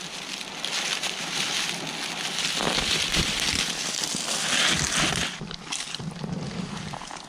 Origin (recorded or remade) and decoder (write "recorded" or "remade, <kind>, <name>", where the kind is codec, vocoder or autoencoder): recorded